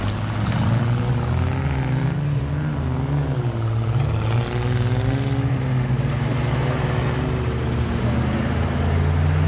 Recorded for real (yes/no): yes